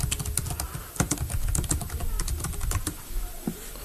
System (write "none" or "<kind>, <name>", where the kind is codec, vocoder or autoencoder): none